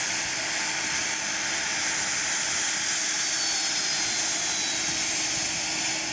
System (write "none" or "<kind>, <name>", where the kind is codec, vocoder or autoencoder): none